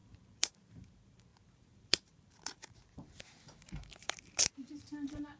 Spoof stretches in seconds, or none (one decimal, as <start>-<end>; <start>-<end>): 0.0-5.4